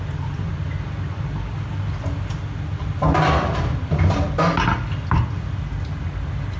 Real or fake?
real